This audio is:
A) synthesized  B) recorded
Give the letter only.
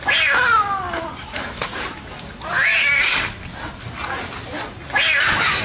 B